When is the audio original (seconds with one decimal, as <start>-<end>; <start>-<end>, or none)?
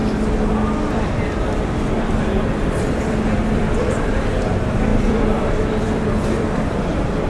0.0-1.9